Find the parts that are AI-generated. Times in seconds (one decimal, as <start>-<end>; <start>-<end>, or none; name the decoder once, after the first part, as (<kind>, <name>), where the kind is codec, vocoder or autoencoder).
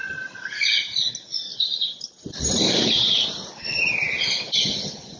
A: 0.0-1.1 (vocoder, BigVGAN v2); 1.5-4.6